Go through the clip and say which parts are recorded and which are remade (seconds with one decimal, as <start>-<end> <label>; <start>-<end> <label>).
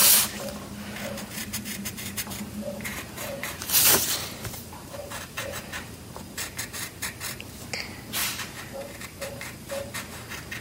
0.0-1.4 recorded; 1.4-5.6 remade; 5.6-8.2 recorded; 8.2-9.7 remade; 9.7-10.6 recorded